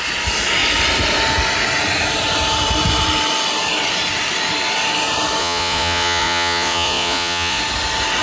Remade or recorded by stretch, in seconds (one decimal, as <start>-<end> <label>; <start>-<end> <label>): 0.0-5.4 recorded; 5.4-7.6 remade; 7.6-8.2 recorded

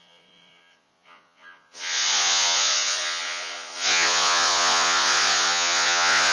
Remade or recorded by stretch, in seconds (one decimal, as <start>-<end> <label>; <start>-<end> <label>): 0.0-6.3 remade